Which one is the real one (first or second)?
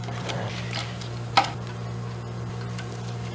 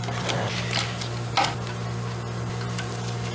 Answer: second